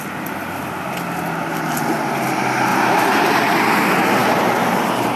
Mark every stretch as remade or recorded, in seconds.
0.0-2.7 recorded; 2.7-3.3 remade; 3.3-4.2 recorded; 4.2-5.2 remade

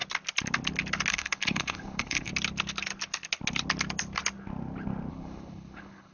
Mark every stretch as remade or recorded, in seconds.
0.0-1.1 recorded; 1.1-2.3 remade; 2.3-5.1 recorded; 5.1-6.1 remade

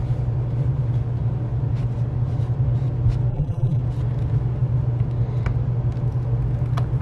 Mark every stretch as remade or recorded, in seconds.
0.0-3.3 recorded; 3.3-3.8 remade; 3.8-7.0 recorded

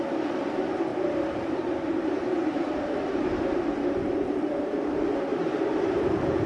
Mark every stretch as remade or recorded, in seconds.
0.0-0.9 recorded; 0.9-4.8 remade; 4.8-5.3 recorded; 5.3-6.5 remade

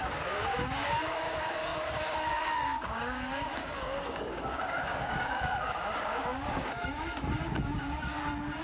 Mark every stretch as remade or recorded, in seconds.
0.0-8.1 remade; 8.1-8.6 recorded

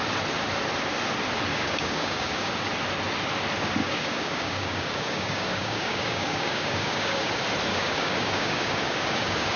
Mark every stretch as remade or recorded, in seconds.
0.0-1.5 recorded; 1.5-2.5 remade; 2.5-3.8 recorded; 3.8-7.3 remade; 7.3-7.7 recorded; 7.7-9.6 remade